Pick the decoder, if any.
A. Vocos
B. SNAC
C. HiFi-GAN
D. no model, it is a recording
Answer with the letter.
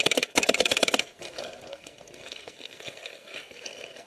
B